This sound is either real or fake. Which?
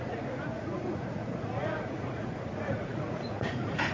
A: fake